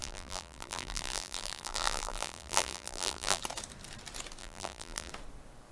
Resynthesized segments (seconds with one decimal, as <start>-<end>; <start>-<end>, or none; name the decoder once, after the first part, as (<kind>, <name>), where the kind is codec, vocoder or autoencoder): 0.0-3.4 (vocoder, BigVGAN v2); 4.4-5.1